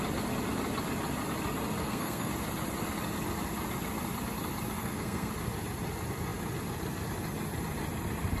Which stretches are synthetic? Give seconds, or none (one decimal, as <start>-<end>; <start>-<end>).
1.8-2.3; 4.8-5.3